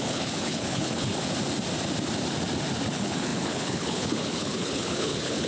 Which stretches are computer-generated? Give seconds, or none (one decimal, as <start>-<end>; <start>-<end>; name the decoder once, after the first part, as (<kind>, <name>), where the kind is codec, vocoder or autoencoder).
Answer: 0.0-1.1 (codec, HILCodec); 2.9-5.5